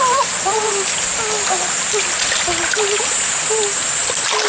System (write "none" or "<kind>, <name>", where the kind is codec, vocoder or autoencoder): none